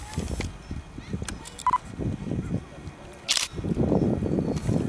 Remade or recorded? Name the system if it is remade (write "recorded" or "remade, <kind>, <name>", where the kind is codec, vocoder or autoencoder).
recorded